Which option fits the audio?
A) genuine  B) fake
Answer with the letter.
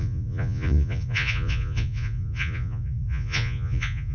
B